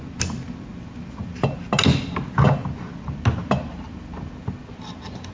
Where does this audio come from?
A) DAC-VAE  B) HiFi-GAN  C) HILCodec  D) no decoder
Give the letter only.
D